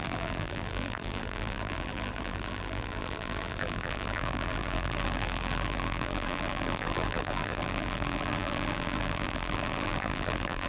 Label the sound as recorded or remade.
remade